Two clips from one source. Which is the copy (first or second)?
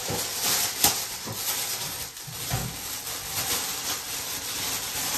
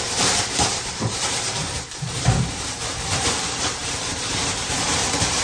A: second